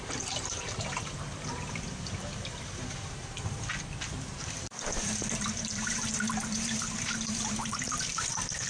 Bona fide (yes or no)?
no